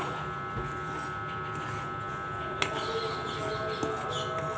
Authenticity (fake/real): real